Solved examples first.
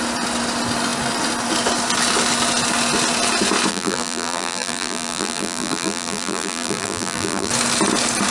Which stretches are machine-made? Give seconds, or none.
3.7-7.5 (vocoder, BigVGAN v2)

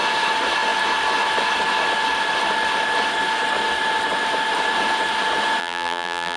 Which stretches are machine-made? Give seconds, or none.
5.6-6.4 (vocoder, BigVGAN v2)

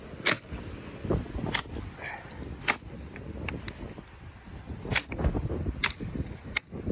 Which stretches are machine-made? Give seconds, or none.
1.0-1.7 (vocoder, BigVGAN v2)

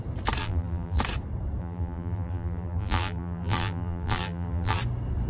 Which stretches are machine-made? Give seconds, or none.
0.4-1.0 (vocoder, BigVGAN v2); 1.6-4.8

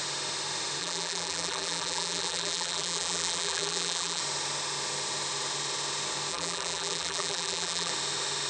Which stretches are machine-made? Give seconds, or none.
0.8-4.2 (vocoder, BigVGAN v2); 6.3-7.9